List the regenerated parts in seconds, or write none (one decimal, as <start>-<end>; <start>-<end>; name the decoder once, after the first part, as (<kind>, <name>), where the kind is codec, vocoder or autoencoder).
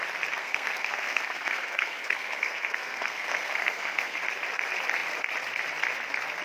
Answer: 0.4-4.2 (codec, SNAC)